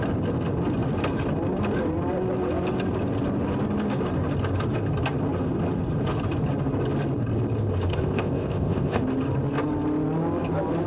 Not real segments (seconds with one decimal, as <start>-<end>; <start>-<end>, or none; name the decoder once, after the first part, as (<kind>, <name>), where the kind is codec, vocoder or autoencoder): 7.9-9.0 (codec, ZipCodec)

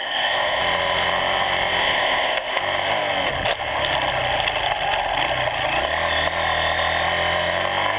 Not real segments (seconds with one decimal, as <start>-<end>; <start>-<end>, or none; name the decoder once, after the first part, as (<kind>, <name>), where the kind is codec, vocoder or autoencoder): 0.0-0.6 (codec, ZipCodec); 1.8-2.6